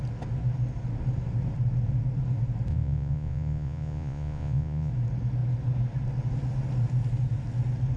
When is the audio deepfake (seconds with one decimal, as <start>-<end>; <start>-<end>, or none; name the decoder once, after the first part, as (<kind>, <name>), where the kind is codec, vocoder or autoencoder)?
2.7-4.9 (vocoder, Vocos)